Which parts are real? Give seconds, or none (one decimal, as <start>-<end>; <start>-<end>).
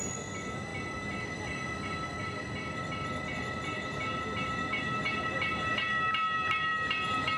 0.0-7.4